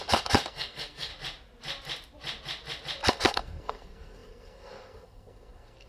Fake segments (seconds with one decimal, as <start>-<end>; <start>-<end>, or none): 0.0-1.1; 3.1-5.9

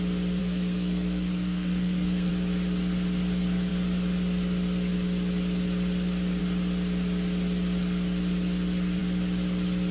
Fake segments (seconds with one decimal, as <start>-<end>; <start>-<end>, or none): 0.4-2.3

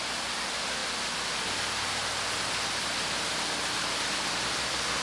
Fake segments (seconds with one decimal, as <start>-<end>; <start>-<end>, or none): none

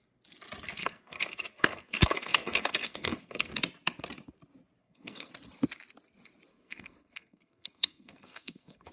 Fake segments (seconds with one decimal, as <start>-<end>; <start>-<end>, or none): 0.8-3.5; 4.8-5.3; 6.5-8.9

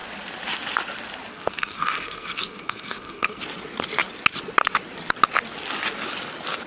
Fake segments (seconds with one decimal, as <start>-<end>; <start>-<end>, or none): 1.3-3.4

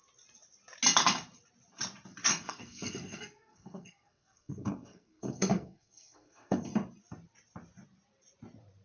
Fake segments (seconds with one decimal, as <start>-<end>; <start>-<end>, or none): 2.3-6.7

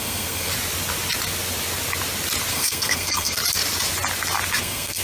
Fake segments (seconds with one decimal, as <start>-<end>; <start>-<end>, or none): 0.0-0.5; 2.5-3.4; 4.6-5.0

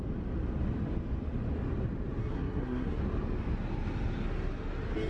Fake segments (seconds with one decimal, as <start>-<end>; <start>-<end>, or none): 2.2-3.0